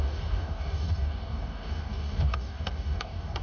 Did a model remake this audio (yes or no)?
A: yes